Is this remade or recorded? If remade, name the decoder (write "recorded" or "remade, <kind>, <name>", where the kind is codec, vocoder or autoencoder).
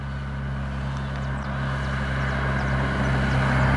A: recorded